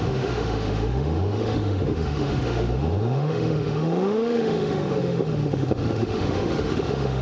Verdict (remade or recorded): remade